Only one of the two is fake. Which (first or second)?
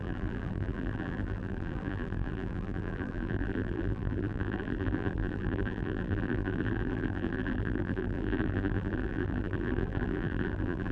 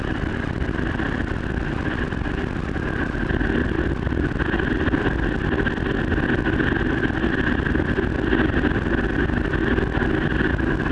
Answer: first